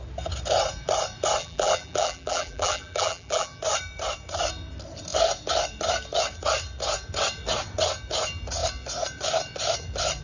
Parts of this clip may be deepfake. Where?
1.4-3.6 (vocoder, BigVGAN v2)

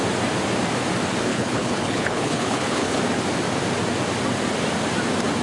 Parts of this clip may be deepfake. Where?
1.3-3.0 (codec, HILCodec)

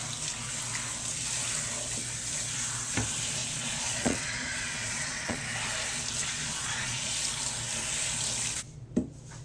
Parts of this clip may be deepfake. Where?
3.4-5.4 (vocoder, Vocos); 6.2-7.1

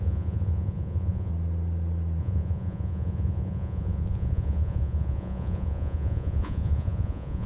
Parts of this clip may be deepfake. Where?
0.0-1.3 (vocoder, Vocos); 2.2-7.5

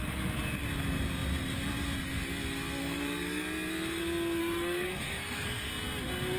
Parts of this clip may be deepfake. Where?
2.8-3.4 (codec, SNAC); 4.4-5.7

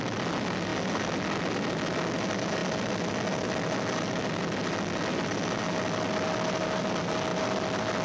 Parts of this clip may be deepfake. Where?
none